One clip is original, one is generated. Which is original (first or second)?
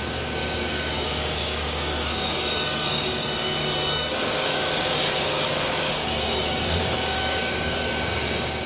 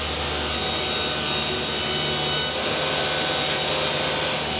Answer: second